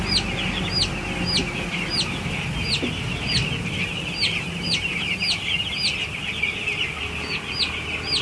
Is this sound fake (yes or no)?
no